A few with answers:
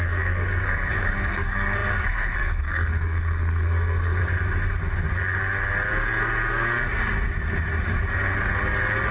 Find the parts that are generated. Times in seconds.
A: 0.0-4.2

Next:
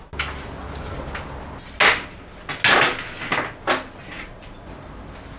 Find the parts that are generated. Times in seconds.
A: none

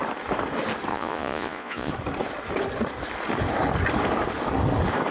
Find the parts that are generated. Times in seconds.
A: 0.9-1.9

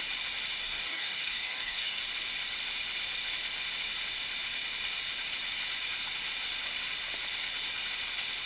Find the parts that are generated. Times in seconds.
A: 0.6-2.0

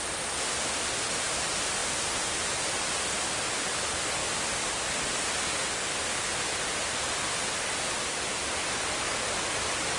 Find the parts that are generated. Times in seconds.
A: none

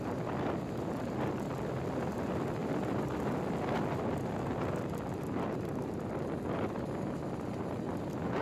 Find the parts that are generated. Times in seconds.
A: none

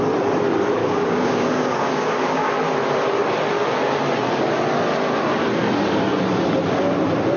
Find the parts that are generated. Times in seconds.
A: 0.8-2.5